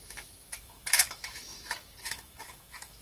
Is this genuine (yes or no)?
no